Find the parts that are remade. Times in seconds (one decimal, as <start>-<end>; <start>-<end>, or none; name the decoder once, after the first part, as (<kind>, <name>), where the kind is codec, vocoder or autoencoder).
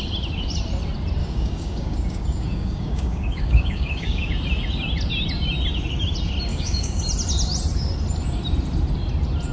1.2-4.3 (codec, DAC); 6.5-7.0